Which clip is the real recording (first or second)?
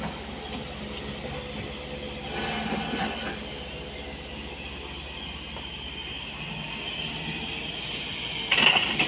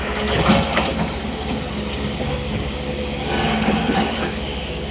first